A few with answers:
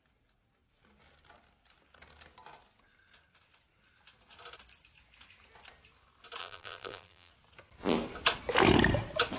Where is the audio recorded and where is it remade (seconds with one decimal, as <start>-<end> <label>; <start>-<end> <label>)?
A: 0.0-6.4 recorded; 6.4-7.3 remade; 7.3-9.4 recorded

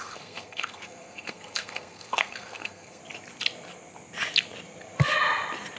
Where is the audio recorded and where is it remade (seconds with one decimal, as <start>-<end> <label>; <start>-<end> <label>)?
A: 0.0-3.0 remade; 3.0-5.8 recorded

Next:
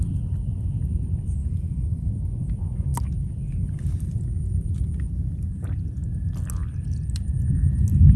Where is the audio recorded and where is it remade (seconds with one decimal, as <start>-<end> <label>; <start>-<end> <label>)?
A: 0.0-1.4 recorded; 1.4-2.1 remade; 2.1-8.2 recorded

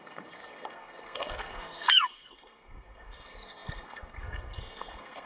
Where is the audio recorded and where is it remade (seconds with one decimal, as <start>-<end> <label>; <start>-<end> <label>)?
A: 0.0-5.3 remade

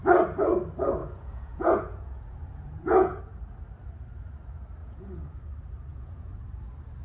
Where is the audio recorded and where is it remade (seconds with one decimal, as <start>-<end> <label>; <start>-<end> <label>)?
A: 0.0-1.0 recorded; 1.0-3.2 remade; 3.2-4.8 recorded; 4.8-5.4 remade; 5.4-5.9 recorded; 5.9-6.4 remade; 6.4-7.0 recorded

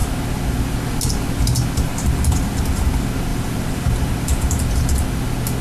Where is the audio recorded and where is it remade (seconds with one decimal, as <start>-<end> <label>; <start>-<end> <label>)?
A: 0.0-3.3 recorded; 3.3-4.5 remade; 4.5-5.6 recorded